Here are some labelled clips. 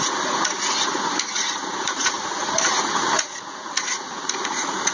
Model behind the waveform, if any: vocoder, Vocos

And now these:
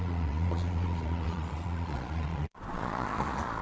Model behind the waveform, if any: vocoder, Vocos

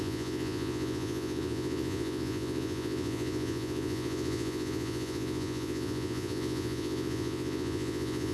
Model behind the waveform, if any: vocoder, Vocos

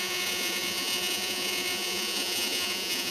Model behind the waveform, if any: vocoder, Vocos